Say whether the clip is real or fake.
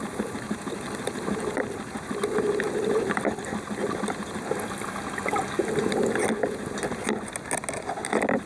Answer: real